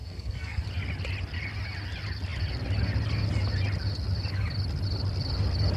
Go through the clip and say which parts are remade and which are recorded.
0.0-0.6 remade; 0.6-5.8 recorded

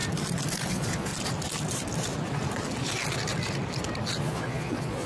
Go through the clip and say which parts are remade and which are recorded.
0.0-0.7 recorded; 0.7-1.1 remade; 1.1-4.2 recorded; 4.2-5.1 remade

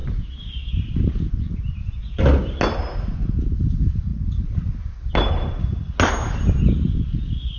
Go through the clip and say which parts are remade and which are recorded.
0.0-7.6 recorded

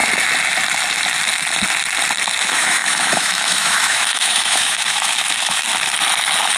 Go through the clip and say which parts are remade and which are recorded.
0.0-2.4 recorded; 2.4-5.7 remade; 5.7-6.6 recorded

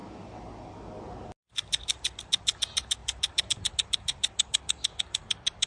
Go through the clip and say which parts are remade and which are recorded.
0.0-3.0 recorded; 3.0-3.5 remade; 3.5-5.7 recorded

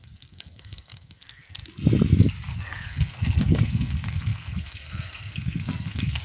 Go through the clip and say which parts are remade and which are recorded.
0.0-1.6 remade; 1.6-2.5 recorded; 2.5-6.2 remade

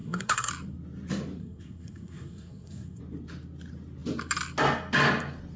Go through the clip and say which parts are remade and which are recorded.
0.0-0.5 remade; 0.5-1.4 recorded; 1.4-3.0 remade; 3.0-5.6 recorded

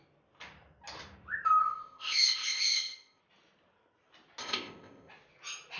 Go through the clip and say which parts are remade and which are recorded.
0.0-1.6 recorded; 1.6-3.2 remade; 3.2-4.4 recorded; 4.4-5.1 remade; 5.1-5.8 recorded